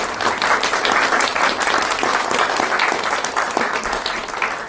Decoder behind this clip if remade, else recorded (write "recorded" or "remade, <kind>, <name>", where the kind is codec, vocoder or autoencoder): recorded